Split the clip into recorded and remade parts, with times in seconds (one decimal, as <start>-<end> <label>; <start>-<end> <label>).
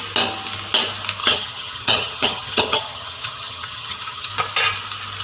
0.0-1.2 recorded; 1.2-4.3 remade; 4.3-5.2 recorded